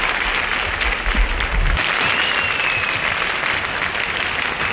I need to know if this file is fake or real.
real